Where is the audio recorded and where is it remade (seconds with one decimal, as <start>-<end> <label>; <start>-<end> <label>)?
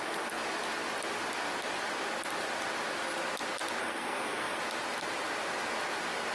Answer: 0.0-3.8 recorded; 3.8-4.6 remade; 4.6-6.3 recorded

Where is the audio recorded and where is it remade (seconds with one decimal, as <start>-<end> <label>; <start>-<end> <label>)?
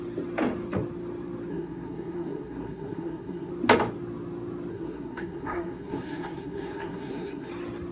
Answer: 0.0-1.5 recorded; 1.5-3.5 remade; 3.5-4.7 recorded; 4.7-7.5 remade; 7.5-7.9 recorded